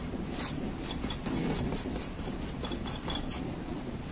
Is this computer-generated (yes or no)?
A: no